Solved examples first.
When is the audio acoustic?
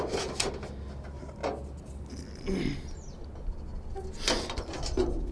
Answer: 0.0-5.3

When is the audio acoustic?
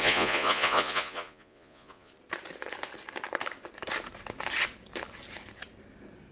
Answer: 2.1-6.3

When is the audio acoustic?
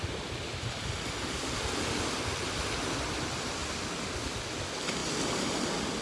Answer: 0.0-6.0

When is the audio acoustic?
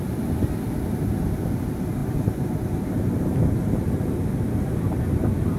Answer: 0.0-5.6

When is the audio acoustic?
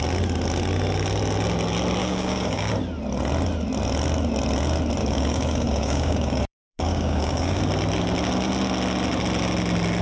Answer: 0.0-2.0; 2.7-5.0; 7.6-10.0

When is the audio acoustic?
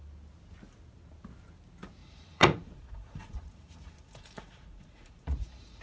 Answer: 0.0-2.0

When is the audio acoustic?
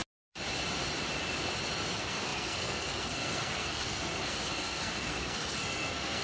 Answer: 0.0-1.9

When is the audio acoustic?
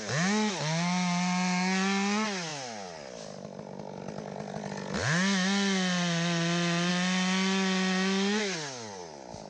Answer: 0.0-9.5